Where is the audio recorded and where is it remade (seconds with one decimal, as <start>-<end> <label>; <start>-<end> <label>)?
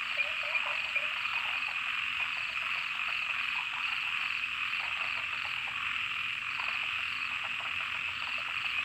0.0-8.8 recorded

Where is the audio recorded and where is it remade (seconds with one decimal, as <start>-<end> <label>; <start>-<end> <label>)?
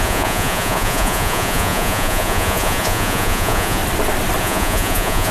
0.0-3.8 remade; 3.8-4.4 recorded; 4.4-5.3 remade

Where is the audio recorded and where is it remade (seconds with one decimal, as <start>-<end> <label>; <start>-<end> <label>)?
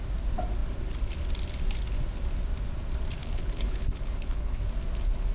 0.0-3.2 recorded; 3.2-4.6 remade; 4.6-5.3 recorded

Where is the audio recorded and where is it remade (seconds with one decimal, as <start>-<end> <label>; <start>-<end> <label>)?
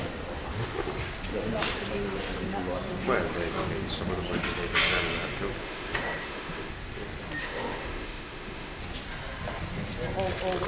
0.0-5.6 recorded; 5.6-6.7 remade; 6.7-7.4 recorded; 7.4-8.8 remade; 8.8-10.7 recorded